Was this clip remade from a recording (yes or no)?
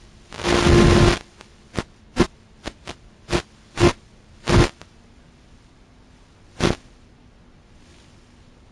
no